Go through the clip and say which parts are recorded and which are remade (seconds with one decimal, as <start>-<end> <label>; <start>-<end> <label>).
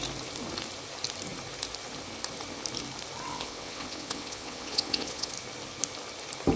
0.0-3.3 recorded; 3.3-5.3 remade; 5.3-6.6 recorded